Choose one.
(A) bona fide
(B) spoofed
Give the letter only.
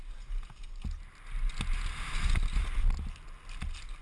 A